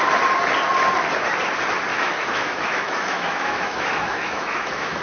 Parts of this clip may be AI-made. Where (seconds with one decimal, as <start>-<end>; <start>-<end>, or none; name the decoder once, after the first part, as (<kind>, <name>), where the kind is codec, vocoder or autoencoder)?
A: 1.9-5.0 (autoencoder, DAC-VAE)

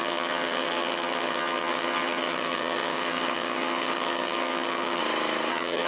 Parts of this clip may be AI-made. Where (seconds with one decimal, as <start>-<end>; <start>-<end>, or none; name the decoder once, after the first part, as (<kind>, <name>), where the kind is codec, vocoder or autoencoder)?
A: 0.0-5.0 (vocoder, HiFi-GAN); 5.5-5.9

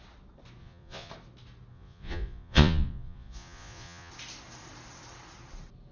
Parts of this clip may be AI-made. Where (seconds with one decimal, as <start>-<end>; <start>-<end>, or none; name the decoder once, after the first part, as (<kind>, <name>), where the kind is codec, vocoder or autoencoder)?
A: 0.6-1.1 (vocoder, Vocos); 1.7-4.1

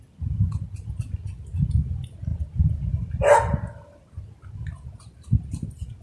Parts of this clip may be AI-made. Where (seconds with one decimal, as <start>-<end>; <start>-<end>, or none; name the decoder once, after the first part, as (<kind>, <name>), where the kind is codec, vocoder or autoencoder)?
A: none

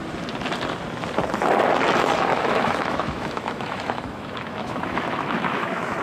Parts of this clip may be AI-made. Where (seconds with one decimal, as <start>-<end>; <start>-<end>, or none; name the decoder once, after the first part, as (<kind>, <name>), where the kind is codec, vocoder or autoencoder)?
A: 2.3-6.0 (autoencoder, DAC-VAE)

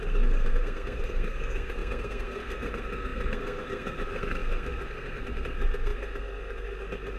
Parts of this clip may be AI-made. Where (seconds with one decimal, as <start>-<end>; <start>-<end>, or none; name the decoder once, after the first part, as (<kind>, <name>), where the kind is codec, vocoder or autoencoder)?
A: 0.0-7.2 (codec, SNAC)